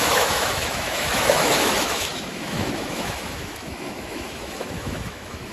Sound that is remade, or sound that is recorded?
remade